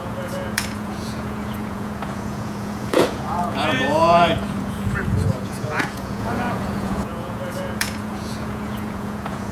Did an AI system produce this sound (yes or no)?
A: yes